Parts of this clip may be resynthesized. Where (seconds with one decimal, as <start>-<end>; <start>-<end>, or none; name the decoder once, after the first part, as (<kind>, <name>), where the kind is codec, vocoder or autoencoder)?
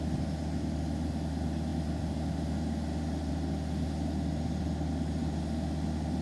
none